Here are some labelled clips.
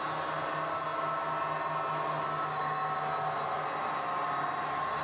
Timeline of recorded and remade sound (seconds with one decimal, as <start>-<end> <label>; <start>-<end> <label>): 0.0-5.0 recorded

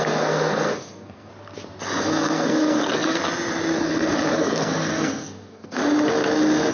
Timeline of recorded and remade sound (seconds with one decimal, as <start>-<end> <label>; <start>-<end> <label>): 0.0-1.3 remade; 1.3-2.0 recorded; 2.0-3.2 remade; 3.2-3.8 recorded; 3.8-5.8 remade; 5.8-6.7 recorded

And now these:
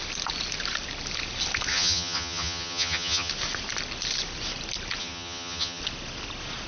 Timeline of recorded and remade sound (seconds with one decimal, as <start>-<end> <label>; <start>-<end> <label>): 0.0-1.7 recorded; 1.7-3.3 remade; 3.3-5.0 recorded; 5.0-5.8 remade; 5.8-6.7 recorded